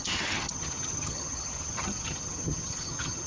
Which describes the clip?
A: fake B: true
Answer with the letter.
A